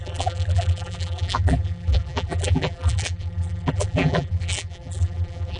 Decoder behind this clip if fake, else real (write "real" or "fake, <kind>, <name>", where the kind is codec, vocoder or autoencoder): fake, vocoder, BigVGAN v2